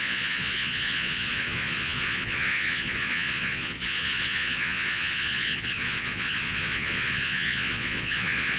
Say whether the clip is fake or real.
fake